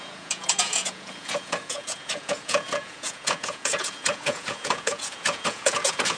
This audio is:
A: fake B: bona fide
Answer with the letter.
A